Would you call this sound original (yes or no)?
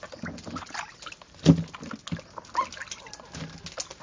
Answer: yes